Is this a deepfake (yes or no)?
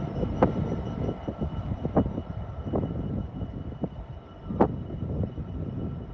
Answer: no